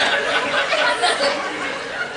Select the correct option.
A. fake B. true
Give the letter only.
A